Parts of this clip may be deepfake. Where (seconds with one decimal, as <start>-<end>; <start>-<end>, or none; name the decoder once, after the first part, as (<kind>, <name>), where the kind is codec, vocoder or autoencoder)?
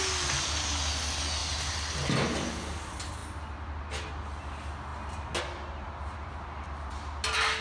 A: none